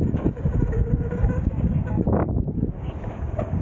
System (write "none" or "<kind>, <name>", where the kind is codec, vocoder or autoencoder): codec, DAC